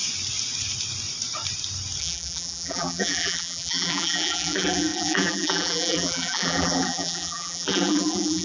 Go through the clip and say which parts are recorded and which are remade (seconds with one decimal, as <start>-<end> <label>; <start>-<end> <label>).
0.0-2.0 recorded; 2.0-8.4 remade